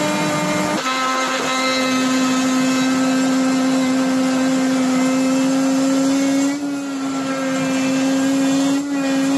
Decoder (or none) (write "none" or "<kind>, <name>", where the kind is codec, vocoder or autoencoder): none